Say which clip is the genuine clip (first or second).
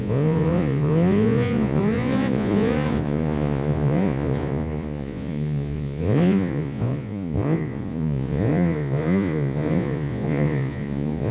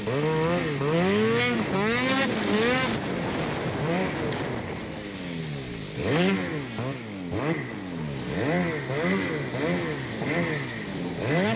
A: second